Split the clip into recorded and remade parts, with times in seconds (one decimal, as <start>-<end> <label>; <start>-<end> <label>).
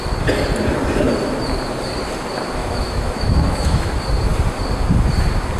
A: 0.0-2.6 recorded; 2.6-3.9 remade; 3.9-5.6 recorded